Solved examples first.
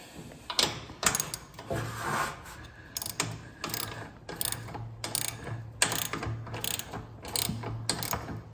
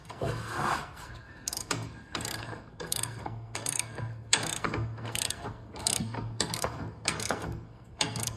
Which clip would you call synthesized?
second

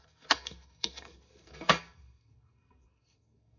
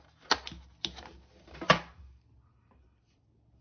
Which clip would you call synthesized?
first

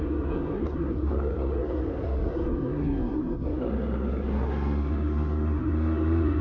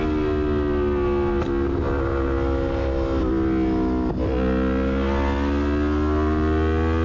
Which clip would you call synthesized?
first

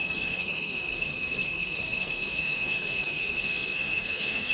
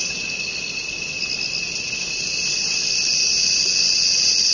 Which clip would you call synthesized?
first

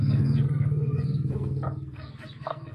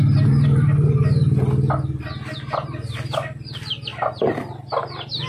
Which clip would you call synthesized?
first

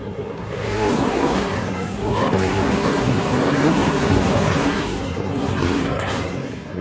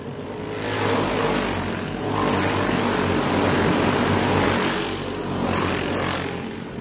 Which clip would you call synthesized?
first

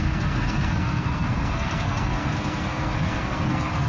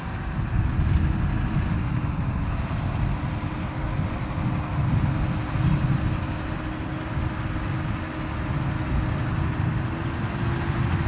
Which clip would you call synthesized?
first